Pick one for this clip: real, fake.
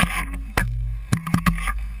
fake